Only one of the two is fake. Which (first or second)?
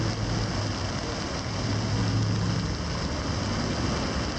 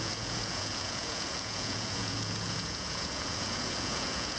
second